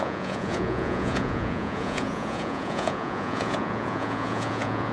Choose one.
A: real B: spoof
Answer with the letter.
B